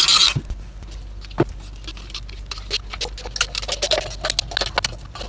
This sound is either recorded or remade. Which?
recorded